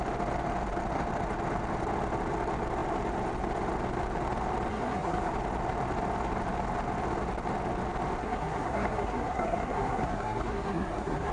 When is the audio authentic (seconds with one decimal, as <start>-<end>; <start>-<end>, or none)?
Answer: 0.0-4.7; 5.3-8.2